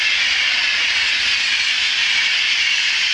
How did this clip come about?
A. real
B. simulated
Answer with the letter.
B